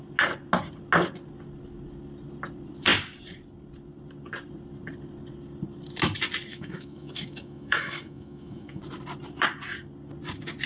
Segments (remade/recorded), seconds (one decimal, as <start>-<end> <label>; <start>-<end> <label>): 0.0-6.5 recorded; 6.5-8.8 remade; 8.8-10.7 recorded